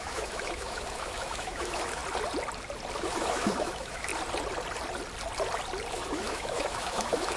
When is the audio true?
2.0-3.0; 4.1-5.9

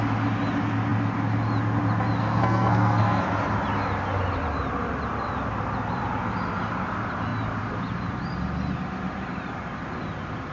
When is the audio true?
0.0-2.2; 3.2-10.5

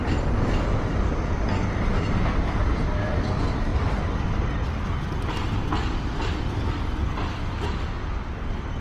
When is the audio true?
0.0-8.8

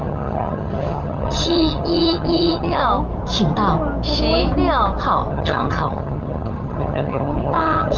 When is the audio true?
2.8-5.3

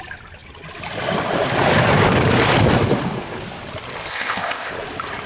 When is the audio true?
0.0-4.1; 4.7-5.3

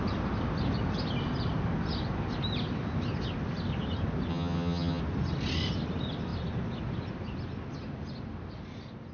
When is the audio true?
0.0-4.3; 5.0-9.1

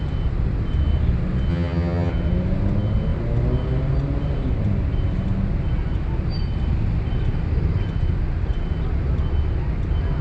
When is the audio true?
0.0-1.5; 2.1-10.2

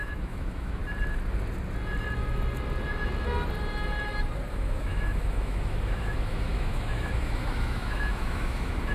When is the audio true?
0.8-4.5